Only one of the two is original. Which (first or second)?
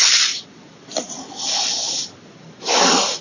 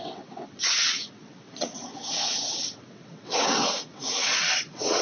first